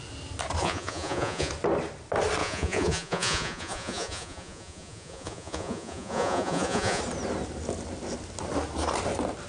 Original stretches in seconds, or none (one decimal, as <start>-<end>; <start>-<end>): 0.0-0.6; 1.5-2.4; 7.0-9.5